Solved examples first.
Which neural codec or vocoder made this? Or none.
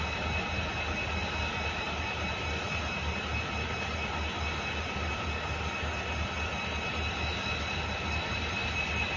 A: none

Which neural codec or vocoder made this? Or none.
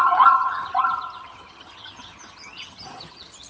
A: vocoder, HiFi-GAN